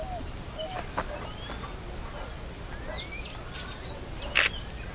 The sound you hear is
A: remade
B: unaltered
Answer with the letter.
B